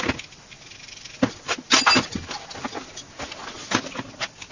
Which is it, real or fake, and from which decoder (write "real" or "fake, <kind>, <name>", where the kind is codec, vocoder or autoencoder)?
real